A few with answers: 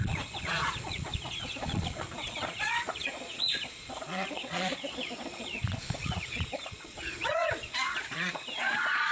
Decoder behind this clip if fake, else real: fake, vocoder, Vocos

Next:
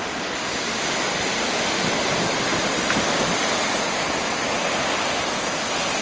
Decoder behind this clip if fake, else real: real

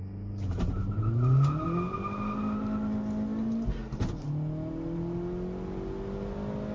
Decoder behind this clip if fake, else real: real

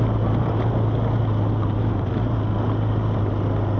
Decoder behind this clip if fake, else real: real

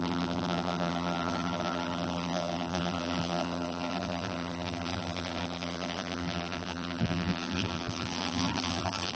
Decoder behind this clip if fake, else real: fake, vocoder, BigVGAN v2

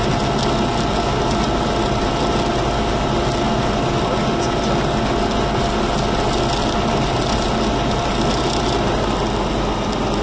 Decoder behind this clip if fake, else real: real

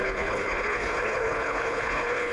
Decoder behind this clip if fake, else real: fake, codec, HILCodec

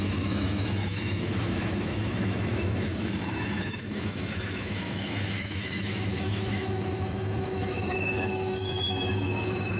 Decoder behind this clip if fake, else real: fake, autoencoder, DAC-VAE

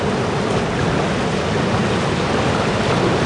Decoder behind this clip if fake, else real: real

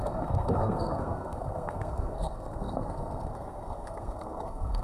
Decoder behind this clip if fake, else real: fake, codec, SNAC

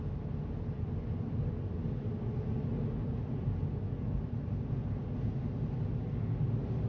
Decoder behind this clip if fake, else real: real